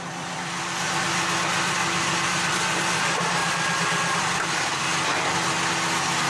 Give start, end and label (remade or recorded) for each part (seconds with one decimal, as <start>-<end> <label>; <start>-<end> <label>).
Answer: 0.0-1.8 recorded; 1.8-2.6 remade; 2.6-3.4 recorded; 3.4-4.8 remade; 4.8-6.3 recorded